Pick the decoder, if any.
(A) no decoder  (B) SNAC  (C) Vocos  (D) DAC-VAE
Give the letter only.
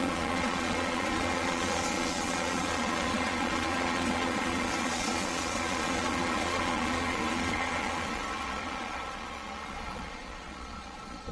C